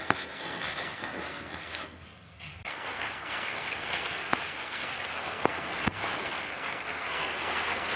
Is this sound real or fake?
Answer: fake